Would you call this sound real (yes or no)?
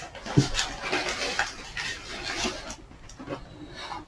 yes